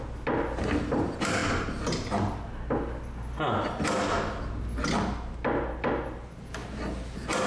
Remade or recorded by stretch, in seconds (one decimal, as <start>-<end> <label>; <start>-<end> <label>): 0.0-7.5 recorded